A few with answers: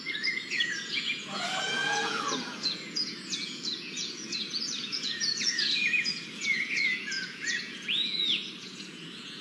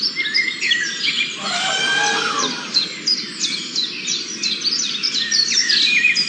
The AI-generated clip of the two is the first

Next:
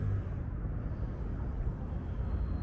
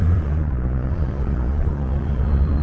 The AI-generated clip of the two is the second